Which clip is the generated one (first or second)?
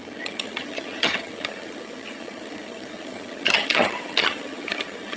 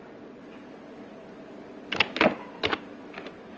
first